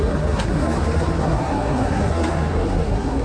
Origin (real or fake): fake